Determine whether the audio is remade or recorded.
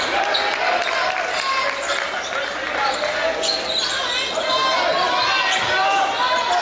recorded